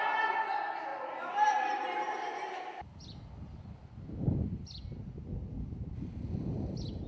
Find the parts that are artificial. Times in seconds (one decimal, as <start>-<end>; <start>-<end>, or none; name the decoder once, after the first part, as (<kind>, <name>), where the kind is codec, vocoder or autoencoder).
none